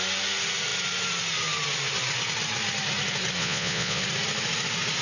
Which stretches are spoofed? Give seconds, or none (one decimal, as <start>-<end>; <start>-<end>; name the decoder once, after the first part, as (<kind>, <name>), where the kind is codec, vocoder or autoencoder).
3.4-4.0 (vocoder, Vocos)

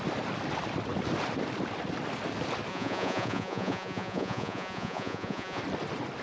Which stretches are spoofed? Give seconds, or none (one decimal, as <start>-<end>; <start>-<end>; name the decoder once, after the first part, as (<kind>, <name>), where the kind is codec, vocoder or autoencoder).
2.7-5.6 (vocoder, Vocos)

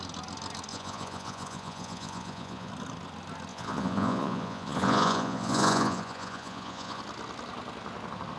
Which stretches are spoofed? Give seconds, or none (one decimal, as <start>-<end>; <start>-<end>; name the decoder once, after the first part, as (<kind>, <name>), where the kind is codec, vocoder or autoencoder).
0.7-2.7 (vocoder, Vocos); 3.5-7.0